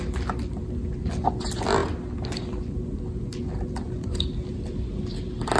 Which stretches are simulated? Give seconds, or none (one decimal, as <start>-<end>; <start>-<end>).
none